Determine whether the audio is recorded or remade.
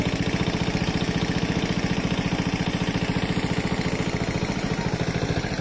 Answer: recorded